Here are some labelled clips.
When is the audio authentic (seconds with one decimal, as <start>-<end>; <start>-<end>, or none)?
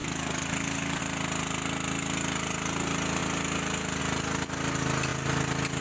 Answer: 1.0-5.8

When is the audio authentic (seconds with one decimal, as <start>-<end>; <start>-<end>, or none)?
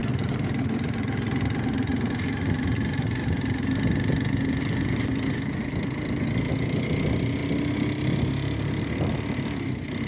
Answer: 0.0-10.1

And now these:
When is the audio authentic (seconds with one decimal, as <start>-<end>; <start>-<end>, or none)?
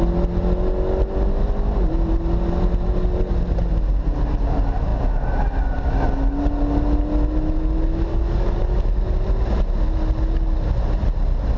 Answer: 0.0-8.1; 9.0-11.6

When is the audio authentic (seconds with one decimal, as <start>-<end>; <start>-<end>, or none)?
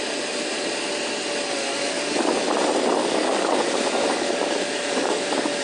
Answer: 0.0-1.8; 2.3-3.0